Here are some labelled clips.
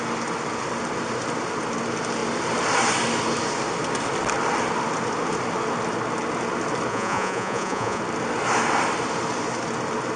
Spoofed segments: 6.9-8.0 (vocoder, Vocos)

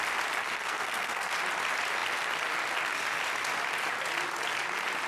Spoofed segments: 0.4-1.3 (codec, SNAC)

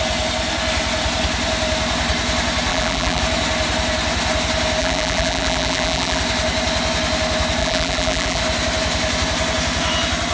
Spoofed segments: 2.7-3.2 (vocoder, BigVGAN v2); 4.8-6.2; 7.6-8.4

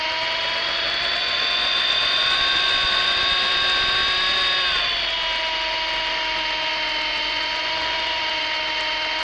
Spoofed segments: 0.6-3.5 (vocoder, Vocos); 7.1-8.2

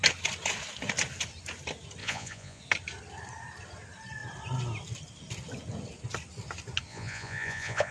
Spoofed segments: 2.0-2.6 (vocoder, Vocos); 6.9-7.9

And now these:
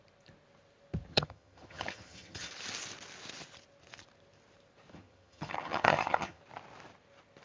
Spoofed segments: 1.1-2.5 (vocoder, HiFi-GAN); 4.9-6.4